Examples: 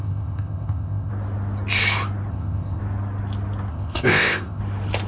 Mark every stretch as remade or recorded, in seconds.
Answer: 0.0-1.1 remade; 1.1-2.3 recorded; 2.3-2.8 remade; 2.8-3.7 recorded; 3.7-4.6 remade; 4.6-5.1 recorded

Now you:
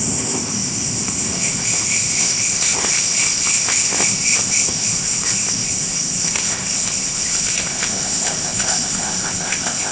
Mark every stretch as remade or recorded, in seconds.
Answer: 0.0-9.9 remade